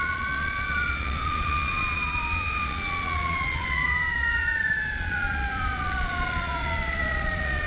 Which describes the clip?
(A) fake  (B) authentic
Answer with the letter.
A